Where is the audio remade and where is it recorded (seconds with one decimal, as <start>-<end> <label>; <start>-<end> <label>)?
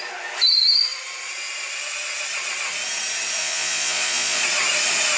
0.0-3.4 recorded; 3.4-4.4 remade; 4.4-5.2 recorded